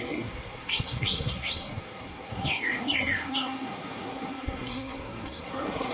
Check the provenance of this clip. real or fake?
fake